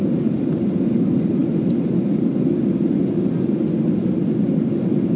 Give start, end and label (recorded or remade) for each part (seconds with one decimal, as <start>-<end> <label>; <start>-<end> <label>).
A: 0.0-5.2 recorded